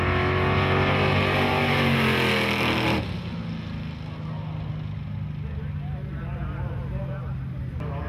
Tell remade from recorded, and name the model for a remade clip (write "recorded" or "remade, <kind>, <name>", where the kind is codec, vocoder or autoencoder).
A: recorded